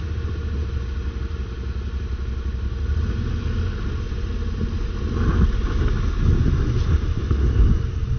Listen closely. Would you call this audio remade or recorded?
recorded